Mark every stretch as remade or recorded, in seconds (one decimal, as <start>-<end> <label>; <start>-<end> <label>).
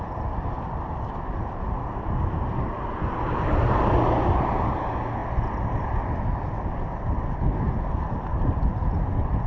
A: 0.0-9.5 recorded